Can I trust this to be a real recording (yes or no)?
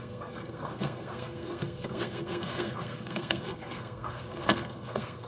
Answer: no